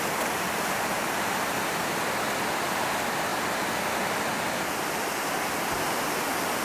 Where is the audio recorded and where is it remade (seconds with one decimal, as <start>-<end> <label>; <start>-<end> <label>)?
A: 0.0-6.6 recorded

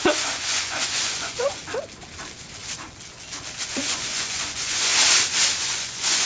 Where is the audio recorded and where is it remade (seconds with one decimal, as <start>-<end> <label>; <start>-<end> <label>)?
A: 0.0-1.6 remade; 1.6-3.7 recorded; 3.7-4.9 remade; 4.9-5.6 recorded; 5.6-6.3 remade

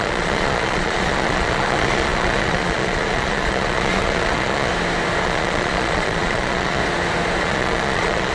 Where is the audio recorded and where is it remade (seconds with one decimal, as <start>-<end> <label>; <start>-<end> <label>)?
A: 0.0-4.7 remade; 4.7-5.2 recorded; 5.2-6.8 remade; 6.8-7.4 recorded; 7.4-8.3 remade

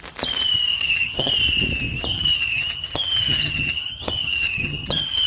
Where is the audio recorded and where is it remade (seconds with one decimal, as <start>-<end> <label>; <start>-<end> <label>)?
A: 0.0-0.7 recorded; 0.7-1.3 remade; 1.3-2.1 recorded; 2.1-5.3 remade

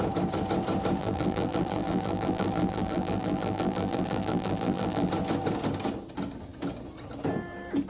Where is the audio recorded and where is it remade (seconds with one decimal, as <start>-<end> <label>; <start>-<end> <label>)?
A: 0.0-1.0 recorded; 1.0-5.1 remade; 5.1-7.9 recorded

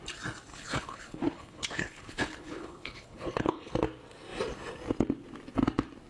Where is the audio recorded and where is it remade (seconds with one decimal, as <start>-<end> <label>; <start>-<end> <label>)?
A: 0.0-0.5 recorded; 0.5-3.7 remade; 3.7-6.1 recorded

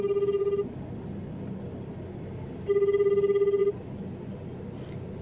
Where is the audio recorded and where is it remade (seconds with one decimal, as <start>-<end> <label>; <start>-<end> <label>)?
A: 0.0-0.4 recorded; 0.4-3.1 remade; 3.1-3.6 recorded; 3.6-5.2 remade

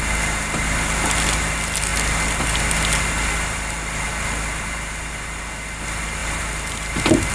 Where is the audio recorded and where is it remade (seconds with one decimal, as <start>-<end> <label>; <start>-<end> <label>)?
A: 0.0-6.2 recorded; 6.2-7.3 remade